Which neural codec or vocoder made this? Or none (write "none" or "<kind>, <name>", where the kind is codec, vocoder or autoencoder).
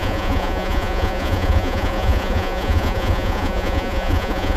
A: vocoder, Vocos